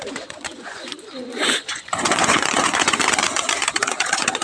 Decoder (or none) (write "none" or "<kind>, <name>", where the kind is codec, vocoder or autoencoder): vocoder, Vocos